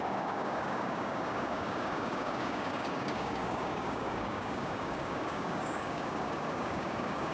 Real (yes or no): no